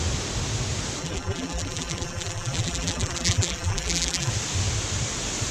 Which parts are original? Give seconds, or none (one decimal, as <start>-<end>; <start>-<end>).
0.0-1.0; 4.3-5.5